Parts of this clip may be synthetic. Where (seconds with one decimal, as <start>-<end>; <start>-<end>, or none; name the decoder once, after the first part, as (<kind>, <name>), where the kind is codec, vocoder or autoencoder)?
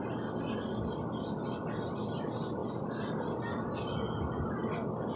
none